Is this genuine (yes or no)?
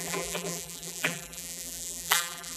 no